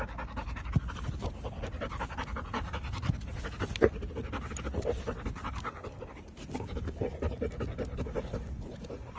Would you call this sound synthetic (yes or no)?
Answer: no